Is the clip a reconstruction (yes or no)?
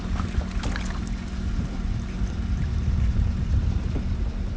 no